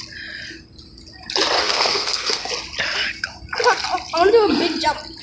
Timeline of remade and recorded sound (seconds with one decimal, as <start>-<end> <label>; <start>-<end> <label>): 0.0-1.6 recorded; 1.6-2.5 remade; 2.5-5.2 recorded